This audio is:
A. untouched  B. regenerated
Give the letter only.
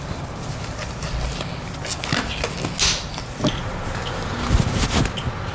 A